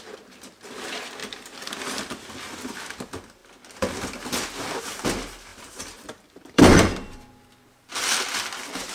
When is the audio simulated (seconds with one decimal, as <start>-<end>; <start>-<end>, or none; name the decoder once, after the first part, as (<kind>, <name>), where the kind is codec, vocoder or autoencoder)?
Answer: 1.2-2.2 (vocoder, BigVGAN v2); 5.5-7.2